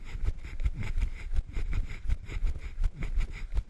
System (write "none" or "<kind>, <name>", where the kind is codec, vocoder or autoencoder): vocoder, BigVGAN v2